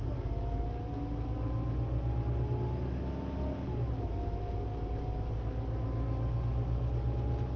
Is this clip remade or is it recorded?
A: recorded